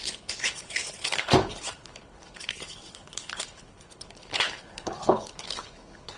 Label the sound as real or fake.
fake